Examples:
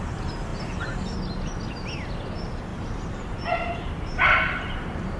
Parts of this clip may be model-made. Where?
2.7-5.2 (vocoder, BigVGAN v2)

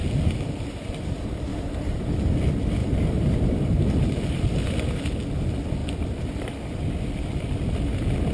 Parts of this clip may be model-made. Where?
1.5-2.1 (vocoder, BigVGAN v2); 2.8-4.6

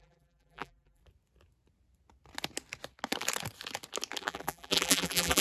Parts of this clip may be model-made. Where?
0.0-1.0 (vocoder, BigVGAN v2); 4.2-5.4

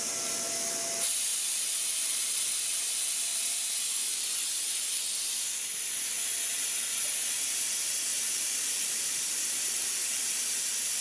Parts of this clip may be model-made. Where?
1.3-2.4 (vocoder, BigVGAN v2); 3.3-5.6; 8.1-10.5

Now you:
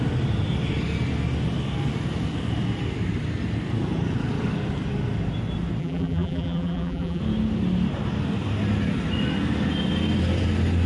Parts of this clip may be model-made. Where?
5.8-7.2 (vocoder, BigVGAN v2)